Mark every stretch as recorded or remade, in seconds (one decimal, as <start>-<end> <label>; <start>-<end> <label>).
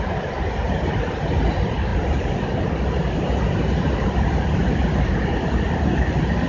0.0-6.5 recorded